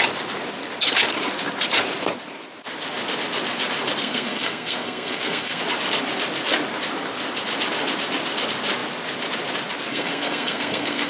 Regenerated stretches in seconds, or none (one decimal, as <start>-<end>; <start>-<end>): 4.0-5.6; 9.9-11.1